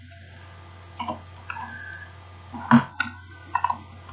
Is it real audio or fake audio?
real